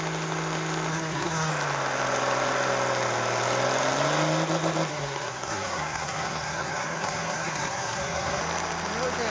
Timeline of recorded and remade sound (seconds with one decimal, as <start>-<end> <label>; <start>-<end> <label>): 0.0-0.9 recorded; 0.9-1.5 remade; 1.5-4.9 recorded; 4.9-8.4 remade; 8.4-9.3 recorded